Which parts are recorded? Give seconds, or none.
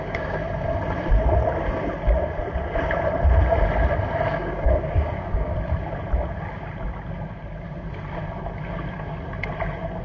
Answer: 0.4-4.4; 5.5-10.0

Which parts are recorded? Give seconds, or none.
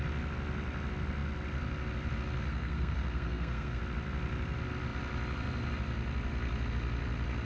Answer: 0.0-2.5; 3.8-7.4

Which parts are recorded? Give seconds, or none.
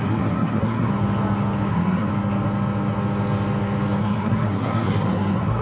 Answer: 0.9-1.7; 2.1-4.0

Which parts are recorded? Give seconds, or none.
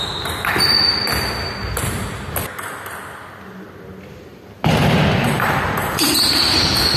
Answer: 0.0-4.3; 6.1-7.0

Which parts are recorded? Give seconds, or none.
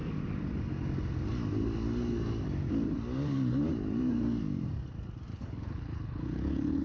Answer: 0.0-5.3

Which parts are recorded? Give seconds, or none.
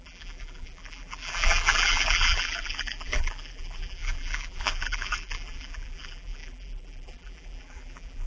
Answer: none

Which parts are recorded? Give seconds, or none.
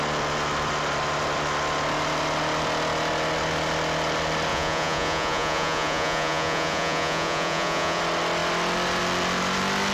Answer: 0.0-4.5; 8.0-9.9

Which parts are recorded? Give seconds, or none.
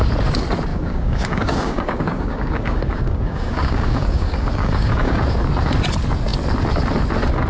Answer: 0.0-0.7; 5.2-7.5